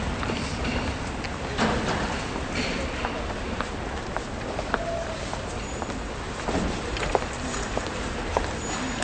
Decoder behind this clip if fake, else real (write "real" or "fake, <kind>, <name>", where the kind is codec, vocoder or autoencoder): real